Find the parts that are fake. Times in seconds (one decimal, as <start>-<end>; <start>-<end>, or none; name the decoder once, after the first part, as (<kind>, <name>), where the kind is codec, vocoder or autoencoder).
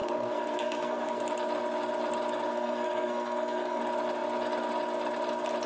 0.0-1.2 (codec, SNAC); 2.5-3.8